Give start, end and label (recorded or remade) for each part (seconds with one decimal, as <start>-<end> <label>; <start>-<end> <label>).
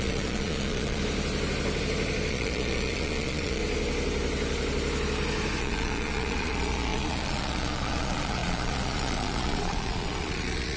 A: 0.0-1.0 remade; 1.0-2.3 recorded; 2.3-3.6 remade; 3.6-5.6 recorded; 5.6-10.8 remade